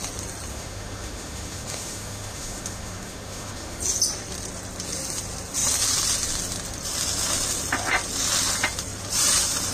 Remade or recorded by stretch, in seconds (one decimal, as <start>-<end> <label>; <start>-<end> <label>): 0.0-0.5 recorded; 0.5-3.8 remade; 3.8-9.7 recorded